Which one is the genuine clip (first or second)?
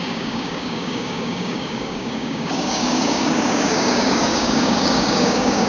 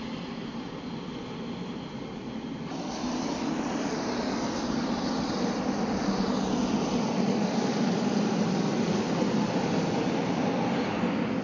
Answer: second